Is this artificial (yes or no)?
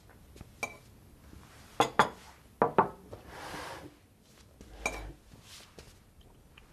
no